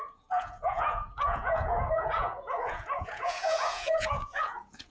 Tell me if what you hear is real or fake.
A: fake